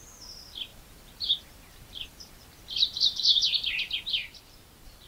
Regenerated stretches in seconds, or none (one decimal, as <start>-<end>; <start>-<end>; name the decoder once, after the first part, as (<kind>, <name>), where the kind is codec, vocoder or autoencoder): 0.7-3.8 (vocoder, BigVGAN v2); 4.2-5.1